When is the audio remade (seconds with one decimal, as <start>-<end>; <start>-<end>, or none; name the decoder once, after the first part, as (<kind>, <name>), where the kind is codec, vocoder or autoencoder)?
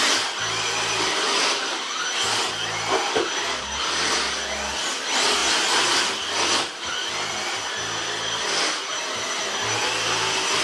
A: none